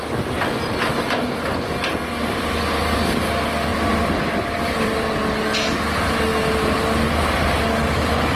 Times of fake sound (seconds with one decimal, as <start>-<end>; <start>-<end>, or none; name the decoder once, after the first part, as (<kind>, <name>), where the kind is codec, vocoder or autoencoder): 0.9-1.4 (vocoder, BigVGAN v2); 3.7-5.1